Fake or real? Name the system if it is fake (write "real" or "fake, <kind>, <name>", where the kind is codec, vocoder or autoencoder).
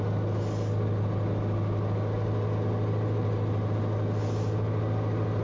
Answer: real